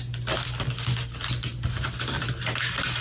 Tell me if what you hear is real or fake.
real